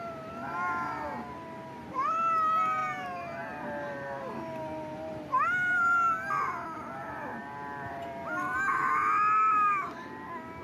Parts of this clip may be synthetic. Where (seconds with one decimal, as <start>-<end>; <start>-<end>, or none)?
none